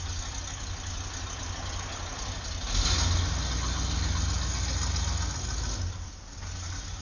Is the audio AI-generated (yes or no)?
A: no